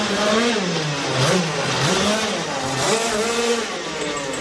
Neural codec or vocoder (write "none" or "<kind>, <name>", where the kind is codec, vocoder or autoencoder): none